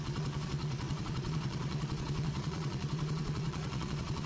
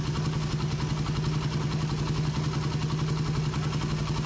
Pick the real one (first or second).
second